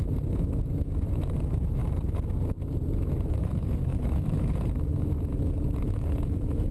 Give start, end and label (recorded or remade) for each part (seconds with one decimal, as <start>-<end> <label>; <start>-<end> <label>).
0.0-1.8 remade; 1.8-3.0 recorded; 3.0-6.7 remade